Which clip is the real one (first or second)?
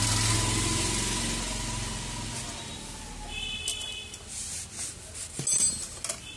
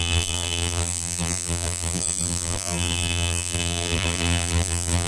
first